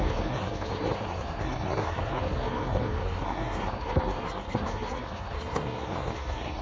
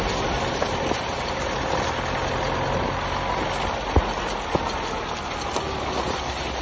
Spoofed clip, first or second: first